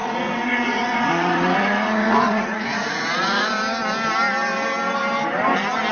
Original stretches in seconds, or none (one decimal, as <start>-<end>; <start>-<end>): 3.5-5.9